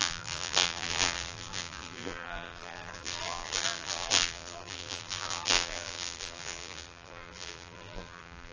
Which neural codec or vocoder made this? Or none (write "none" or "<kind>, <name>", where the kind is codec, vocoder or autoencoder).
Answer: vocoder, BigVGAN v2